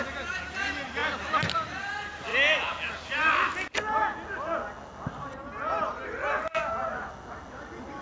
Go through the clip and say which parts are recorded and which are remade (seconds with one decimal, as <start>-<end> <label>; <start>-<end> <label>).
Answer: 0.0-8.0 recorded